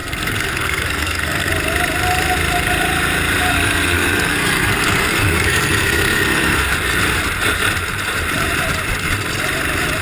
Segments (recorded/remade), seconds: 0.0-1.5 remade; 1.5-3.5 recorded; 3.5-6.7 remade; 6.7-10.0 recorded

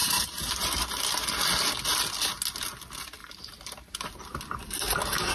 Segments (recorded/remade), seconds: 0.0-1.0 remade; 1.0-3.2 recorded; 3.2-5.3 remade

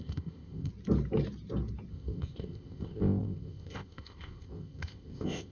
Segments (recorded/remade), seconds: 0.0-0.7 remade; 0.7-1.9 recorded; 1.9-5.5 remade